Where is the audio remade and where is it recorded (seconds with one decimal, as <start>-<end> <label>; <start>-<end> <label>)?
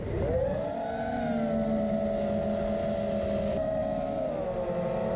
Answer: 0.0-5.2 recorded